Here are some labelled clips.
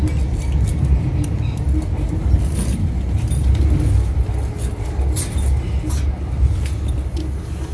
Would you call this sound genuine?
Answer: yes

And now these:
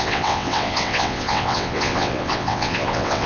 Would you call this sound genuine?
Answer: no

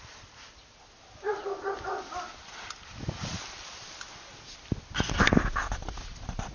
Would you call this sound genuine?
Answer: yes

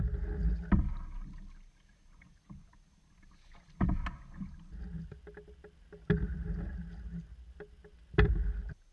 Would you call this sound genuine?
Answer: yes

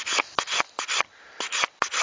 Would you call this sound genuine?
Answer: yes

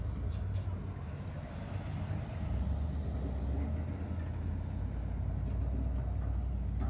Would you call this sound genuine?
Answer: yes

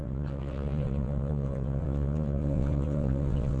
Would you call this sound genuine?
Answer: no